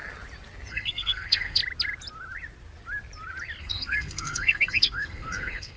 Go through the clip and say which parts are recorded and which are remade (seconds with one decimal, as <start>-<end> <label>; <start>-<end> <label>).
0.0-0.7 recorded; 0.7-1.6 remade; 1.6-3.6 recorded; 3.6-5.8 remade